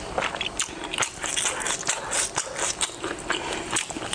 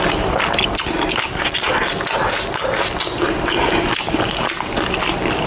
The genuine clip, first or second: second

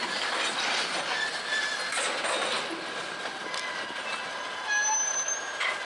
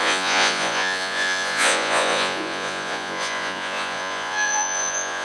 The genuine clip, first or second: first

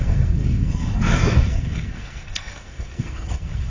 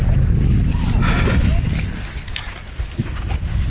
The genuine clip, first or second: second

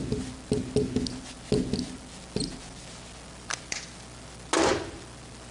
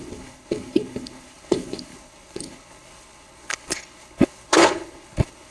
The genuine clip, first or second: first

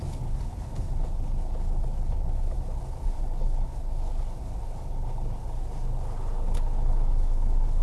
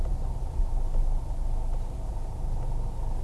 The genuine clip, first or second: second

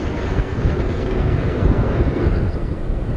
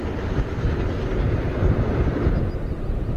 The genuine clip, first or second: second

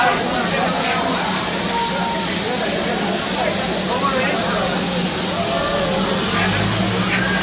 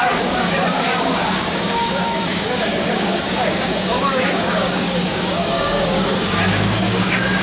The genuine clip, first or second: first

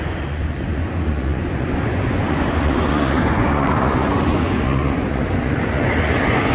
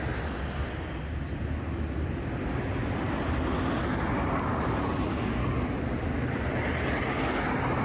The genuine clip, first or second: second